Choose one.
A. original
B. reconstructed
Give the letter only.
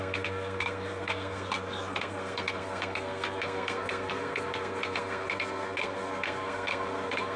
B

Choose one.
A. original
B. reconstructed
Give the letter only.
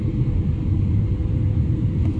A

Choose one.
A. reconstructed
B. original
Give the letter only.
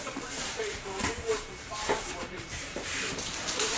A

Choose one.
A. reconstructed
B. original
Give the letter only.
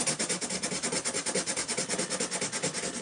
B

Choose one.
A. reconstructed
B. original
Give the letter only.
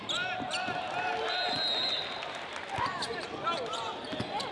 B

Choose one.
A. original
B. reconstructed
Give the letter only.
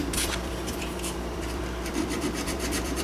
B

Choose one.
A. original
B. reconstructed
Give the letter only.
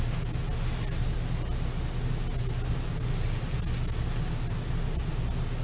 A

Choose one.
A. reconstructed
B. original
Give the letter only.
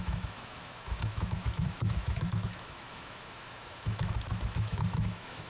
A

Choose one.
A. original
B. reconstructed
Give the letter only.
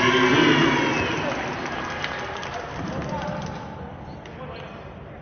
A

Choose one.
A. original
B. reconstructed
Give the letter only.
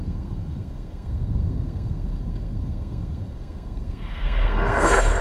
B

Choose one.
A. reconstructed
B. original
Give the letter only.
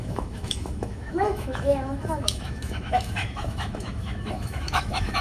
A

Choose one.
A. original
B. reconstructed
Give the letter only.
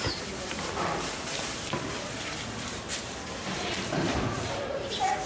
B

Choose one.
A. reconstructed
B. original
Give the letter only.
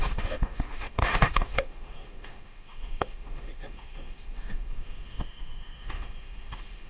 A